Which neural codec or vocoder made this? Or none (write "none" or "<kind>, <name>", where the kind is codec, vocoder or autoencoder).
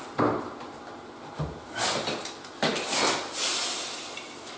none